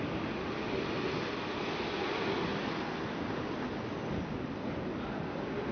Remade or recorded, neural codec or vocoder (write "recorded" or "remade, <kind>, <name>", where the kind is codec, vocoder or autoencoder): recorded